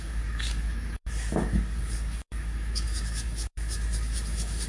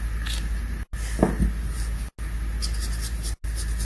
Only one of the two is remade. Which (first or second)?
first